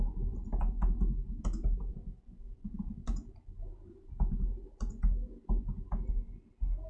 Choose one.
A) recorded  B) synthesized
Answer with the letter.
A